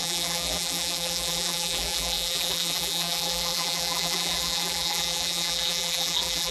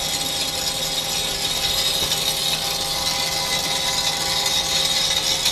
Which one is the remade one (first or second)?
first